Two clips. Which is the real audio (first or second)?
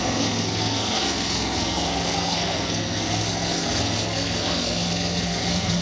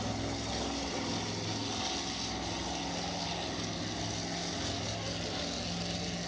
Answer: second